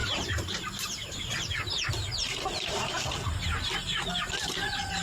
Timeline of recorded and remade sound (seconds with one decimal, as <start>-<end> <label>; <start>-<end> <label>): 0.0-3.0 remade; 3.0-5.0 recorded